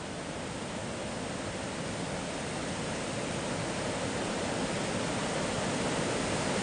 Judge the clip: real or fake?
real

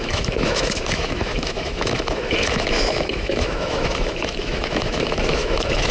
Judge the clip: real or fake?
fake